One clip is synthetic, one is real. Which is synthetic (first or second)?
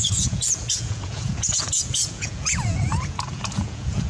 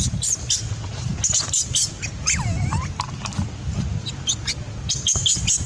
first